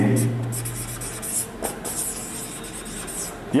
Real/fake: real